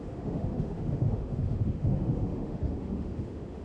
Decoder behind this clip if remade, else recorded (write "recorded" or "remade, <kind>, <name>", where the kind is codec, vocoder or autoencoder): remade, autoencoder, DAC-VAE